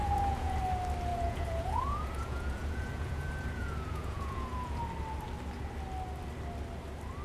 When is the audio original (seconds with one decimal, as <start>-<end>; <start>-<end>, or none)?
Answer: 0.6-1.1; 4.8-7.2